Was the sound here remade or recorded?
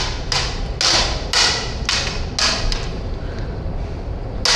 recorded